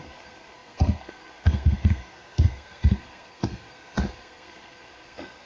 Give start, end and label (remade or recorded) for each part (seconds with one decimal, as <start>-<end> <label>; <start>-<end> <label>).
0.0-5.5 remade